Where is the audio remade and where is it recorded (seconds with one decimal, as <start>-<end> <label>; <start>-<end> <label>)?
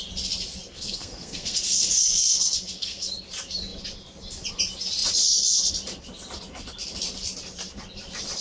0.0-0.7 recorded; 0.7-3.1 remade; 3.1-8.4 recorded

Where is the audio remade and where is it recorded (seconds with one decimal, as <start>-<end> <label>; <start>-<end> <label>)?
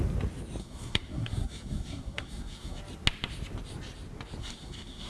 0.0-0.6 recorded; 0.6-2.8 remade; 2.8-4.4 recorded; 4.4-5.1 remade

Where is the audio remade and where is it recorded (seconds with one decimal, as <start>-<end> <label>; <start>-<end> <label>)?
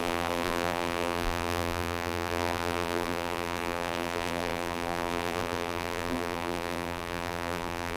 0.0-8.0 remade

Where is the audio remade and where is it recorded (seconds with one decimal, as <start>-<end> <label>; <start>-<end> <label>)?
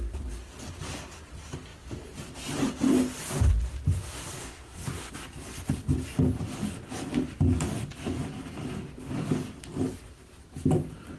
0.0-4.4 recorded; 4.4-5.1 remade; 5.1-11.2 recorded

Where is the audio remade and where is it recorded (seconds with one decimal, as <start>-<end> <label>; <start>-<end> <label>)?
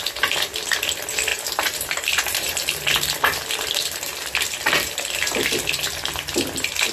0.0-1.3 recorded; 1.3-2.8 remade; 2.8-6.9 recorded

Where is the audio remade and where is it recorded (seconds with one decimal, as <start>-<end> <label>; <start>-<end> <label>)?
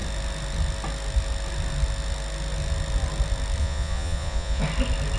0.0-3.6 recorded; 3.6-4.6 remade; 4.6-5.2 recorded